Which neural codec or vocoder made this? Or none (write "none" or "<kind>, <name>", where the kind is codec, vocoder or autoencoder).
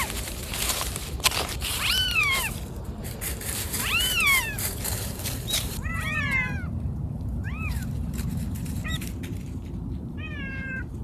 vocoder, BigVGAN v2